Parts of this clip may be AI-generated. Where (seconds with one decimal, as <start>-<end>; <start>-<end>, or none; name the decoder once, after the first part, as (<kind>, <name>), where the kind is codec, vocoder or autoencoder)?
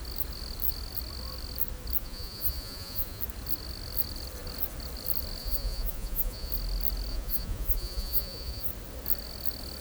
2.0-3.2 (vocoder, Vocos); 5.4-6.5; 7.1-8.7